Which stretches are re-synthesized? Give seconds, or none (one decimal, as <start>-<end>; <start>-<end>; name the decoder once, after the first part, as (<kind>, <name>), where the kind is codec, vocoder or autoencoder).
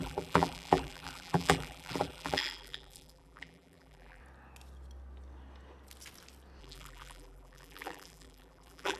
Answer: 0.0-4.2 (vocoder, BigVGAN v2); 6.6-9.0